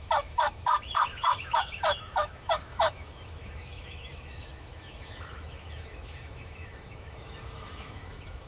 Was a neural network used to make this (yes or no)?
yes